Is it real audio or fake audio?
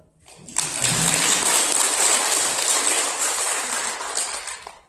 real